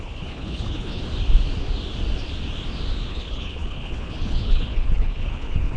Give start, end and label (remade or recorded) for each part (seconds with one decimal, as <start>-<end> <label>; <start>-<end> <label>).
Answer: 0.0-1.0 remade; 1.0-3.1 recorded; 3.1-5.8 remade